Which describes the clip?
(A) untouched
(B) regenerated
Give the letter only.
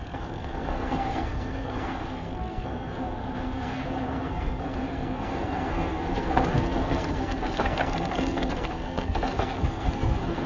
B